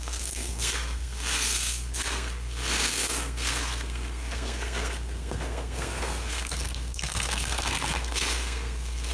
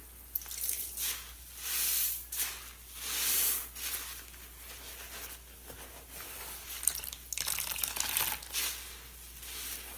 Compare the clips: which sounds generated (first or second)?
first